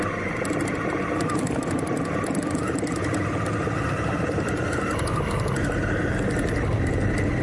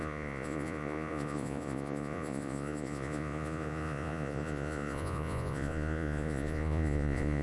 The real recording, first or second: first